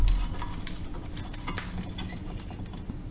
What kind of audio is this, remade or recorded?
recorded